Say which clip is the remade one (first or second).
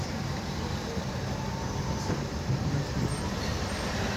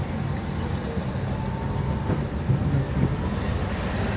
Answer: first